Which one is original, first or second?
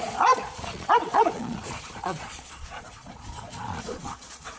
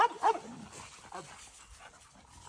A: second